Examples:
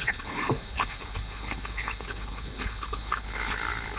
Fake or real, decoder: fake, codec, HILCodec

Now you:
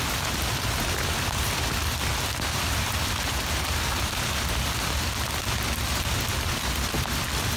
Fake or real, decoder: real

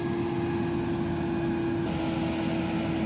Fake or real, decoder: real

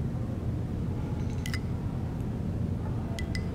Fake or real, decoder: real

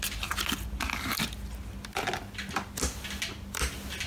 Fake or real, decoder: real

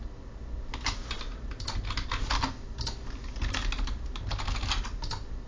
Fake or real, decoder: real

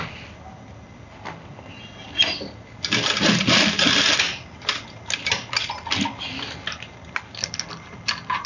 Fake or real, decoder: real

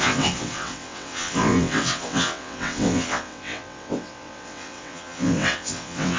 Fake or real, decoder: fake, vocoder, WaveNeXt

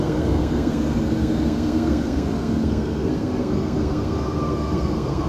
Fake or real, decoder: fake, codec, SNAC